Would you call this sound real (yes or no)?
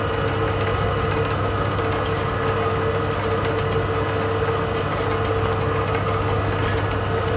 yes